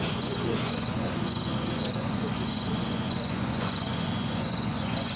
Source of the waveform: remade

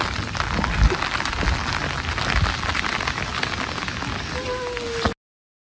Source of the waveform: recorded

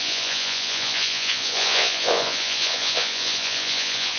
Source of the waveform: remade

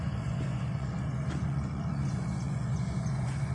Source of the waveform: remade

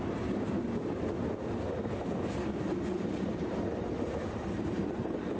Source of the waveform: recorded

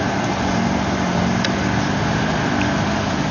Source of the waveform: recorded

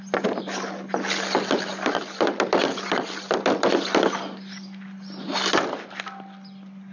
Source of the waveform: recorded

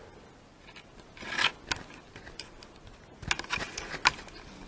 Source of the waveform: recorded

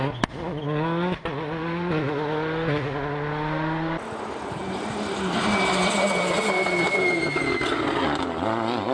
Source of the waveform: recorded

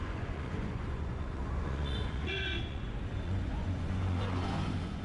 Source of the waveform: remade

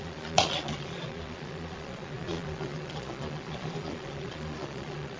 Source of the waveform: remade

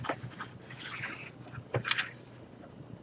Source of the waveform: recorded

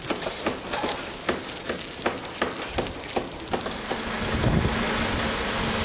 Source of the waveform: recorded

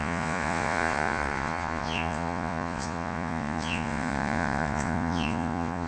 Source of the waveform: remade